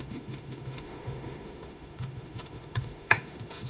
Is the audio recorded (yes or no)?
no